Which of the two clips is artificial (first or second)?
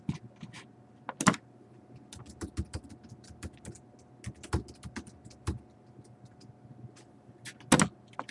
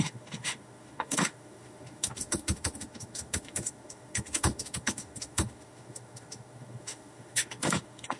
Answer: second